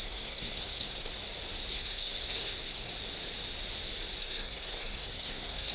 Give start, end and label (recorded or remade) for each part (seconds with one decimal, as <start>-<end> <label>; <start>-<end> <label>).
0.0-1.1 remade; 1.1-1.7 recorded; 1.7-2.9 remade; 2.9-4.2 recorded; 4.2-5.7 remade